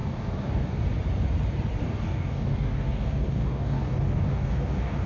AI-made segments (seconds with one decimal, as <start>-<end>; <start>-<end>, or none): 0.0-0.8; 1.8-5.1